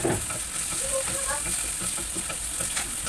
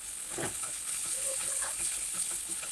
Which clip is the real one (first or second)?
first